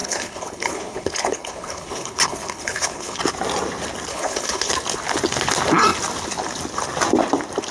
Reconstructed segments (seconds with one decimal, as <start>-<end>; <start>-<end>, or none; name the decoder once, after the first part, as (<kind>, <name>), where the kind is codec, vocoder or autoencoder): 0.0-3.2 (codec, HILCodec); 4.1-4.7